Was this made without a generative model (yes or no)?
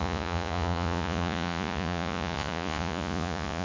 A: no